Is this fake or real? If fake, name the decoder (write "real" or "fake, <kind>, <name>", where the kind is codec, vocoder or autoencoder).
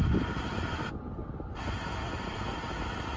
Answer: real